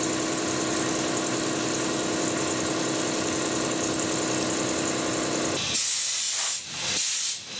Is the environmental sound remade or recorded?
recorded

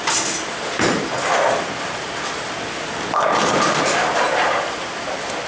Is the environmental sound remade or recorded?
recorded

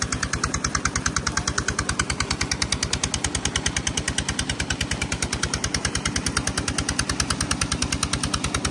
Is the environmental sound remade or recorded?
recorded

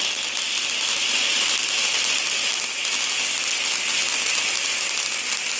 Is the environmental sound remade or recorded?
recorded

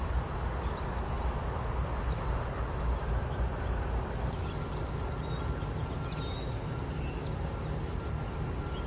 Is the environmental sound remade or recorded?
recorded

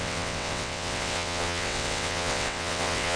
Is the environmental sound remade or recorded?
remade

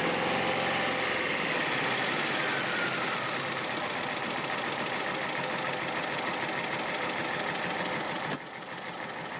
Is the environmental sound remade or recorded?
recorded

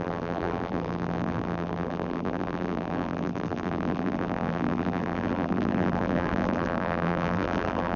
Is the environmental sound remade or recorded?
remade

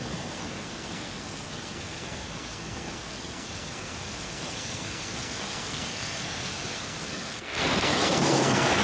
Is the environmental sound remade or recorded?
remade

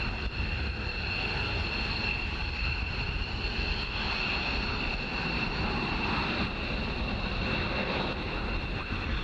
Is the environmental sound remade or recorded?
recorded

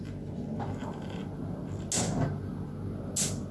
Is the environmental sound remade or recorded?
recorded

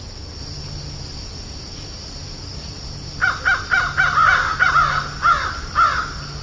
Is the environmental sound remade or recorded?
recorded